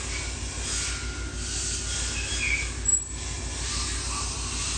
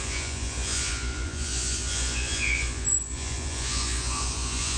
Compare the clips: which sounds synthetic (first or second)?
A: second